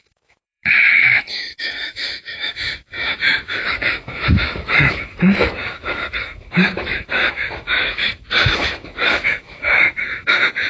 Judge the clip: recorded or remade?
remade